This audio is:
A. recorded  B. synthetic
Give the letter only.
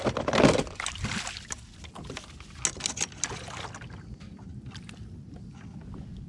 A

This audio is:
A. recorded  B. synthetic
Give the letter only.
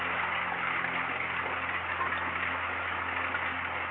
A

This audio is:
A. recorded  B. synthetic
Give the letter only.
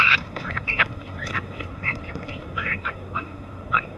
B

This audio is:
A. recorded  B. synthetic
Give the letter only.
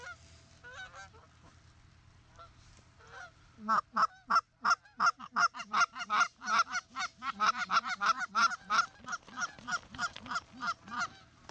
A